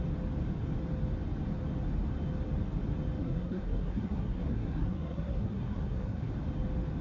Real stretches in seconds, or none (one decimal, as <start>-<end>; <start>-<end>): 0.0-3.2; 6.3-7.0

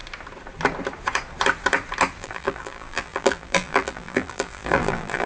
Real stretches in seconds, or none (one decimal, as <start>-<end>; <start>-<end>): 0.0-2.2

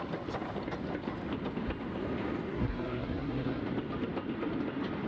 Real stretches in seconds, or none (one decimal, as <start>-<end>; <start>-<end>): 0.0-2.5; 3.6-5.1

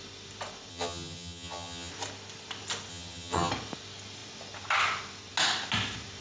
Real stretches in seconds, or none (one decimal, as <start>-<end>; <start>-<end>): 0.0-0.7; 1.9-2.9; 3.5-6.2

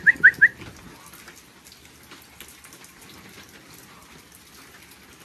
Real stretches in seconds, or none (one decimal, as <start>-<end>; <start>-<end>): 0.0-5.2

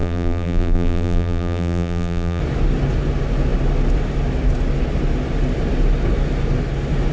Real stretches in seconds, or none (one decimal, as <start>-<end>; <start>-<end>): 2.4-7.1